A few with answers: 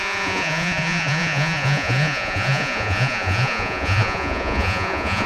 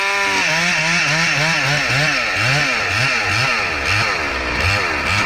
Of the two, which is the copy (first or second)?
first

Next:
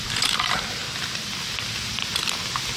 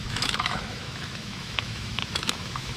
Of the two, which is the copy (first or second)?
second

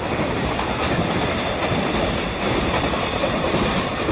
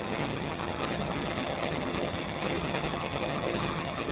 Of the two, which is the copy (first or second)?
second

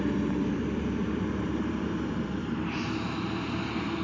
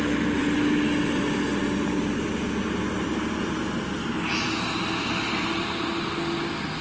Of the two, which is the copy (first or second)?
first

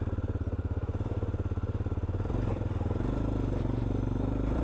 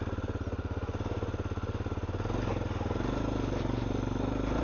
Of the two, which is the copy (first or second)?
first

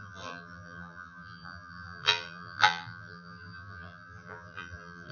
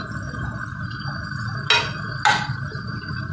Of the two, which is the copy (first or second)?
first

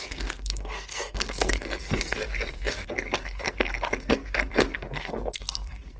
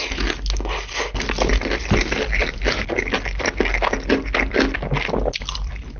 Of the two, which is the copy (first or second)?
first